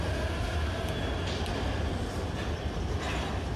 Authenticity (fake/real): real